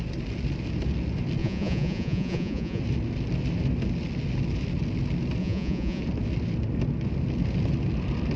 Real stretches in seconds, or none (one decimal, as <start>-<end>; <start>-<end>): 0.0-1.4; 2.8-5.4; 6.0-8.4